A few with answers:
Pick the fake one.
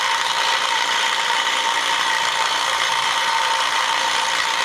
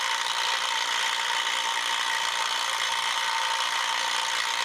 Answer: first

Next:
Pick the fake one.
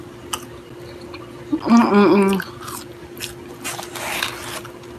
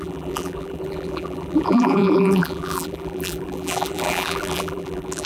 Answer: second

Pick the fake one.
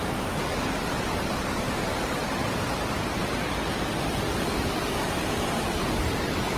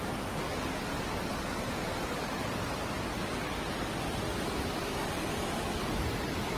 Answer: first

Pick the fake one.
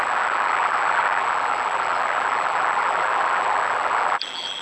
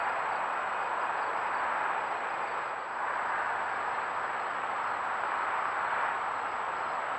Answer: first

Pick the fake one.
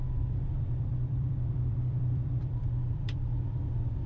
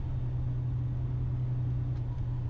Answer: first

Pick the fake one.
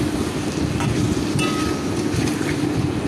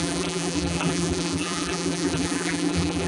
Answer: second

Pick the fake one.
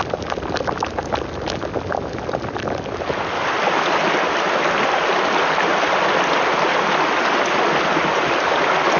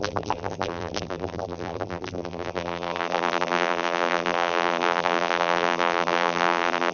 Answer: second